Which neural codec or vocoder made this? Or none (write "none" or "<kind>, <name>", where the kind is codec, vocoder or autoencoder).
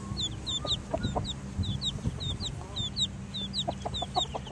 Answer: none